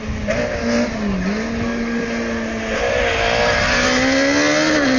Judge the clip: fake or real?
real